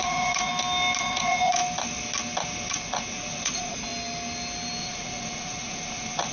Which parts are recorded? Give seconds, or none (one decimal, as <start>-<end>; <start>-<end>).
0.5-1.0; 1.6-2.7; 3.9-4.8